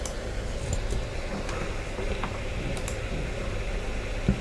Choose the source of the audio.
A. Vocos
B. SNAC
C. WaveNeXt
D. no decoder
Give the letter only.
D